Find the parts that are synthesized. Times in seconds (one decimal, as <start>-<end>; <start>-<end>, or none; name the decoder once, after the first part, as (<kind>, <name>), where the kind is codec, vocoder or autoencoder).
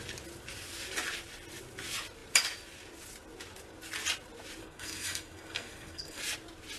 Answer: 4.6-6.2 (codec, SNAC)